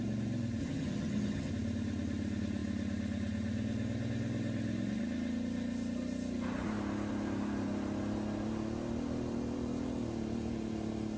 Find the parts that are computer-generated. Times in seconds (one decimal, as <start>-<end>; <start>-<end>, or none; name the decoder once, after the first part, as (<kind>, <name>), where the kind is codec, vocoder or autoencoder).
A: 0.6-1.5 (vocoder, HiFi-GAN)